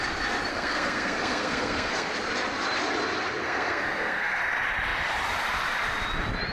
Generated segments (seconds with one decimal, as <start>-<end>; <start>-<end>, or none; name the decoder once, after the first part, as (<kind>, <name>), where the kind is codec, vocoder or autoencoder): 0.5-2.1 (codec, SNAC); 3.4-4.4